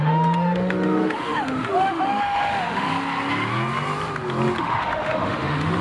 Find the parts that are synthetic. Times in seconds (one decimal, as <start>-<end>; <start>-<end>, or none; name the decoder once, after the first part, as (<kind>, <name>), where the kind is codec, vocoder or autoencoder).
0.0-2.9 (autoencoder, DAC-VAE); 4.6-5.8